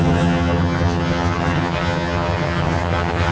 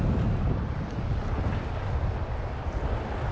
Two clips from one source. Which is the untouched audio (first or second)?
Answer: second